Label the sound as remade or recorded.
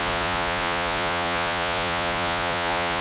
remade